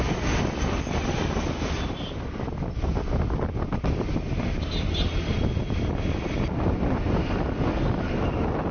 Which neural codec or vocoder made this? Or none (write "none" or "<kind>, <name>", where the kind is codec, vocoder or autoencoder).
none